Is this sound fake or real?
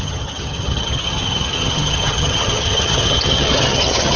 fake